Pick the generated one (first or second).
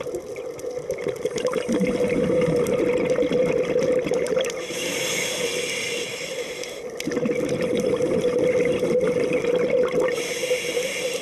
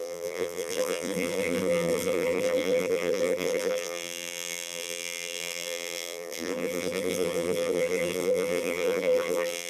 second